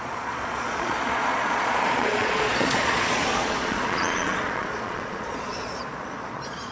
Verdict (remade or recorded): remade